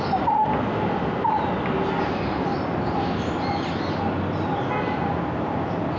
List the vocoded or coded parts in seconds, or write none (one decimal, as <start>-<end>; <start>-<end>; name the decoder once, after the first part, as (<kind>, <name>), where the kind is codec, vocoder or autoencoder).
none